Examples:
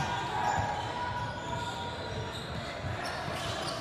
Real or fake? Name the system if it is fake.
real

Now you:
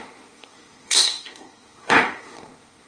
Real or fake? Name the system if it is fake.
fake, codec, SNAC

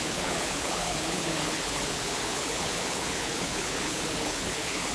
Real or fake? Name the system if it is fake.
fake, codec, HILCodec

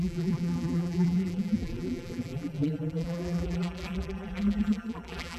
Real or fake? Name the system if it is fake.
fake, vocoder, BigVGAN v2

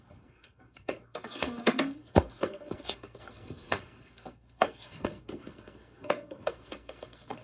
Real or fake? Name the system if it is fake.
fake, codec, SNAC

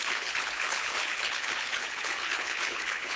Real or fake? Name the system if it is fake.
fake, codec, HILCodec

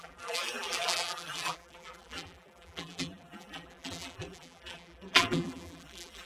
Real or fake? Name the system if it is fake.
fake, vocoder, BigVGAN v2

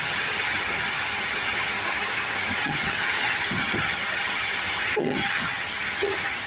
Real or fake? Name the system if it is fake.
fake, vocoder, HiFi-GAN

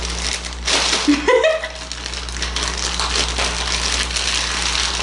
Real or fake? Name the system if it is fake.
real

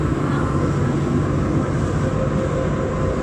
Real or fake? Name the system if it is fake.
real